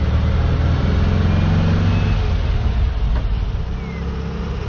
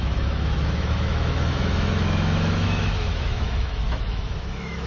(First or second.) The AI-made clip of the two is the second